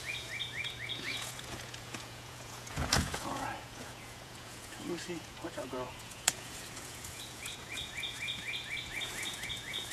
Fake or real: fake